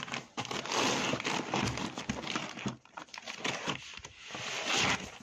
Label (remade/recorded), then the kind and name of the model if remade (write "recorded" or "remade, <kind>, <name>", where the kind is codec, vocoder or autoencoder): recorded